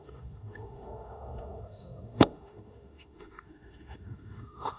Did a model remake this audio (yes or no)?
yes